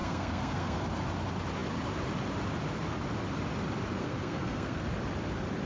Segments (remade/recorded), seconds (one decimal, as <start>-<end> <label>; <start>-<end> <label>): 0.0-0.8 remade; 0.8-4.0 recorded; 4.0-4.8 remade; 4.8-5.7 recorded